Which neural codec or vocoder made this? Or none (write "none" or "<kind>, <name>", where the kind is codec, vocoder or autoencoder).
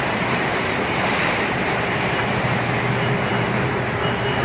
vocoder, BigVGAN v2